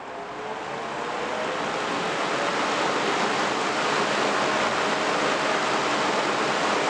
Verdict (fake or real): real